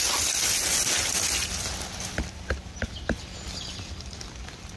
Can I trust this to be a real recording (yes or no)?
yes